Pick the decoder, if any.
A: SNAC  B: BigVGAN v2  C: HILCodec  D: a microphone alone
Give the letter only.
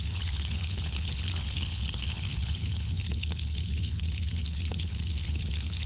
C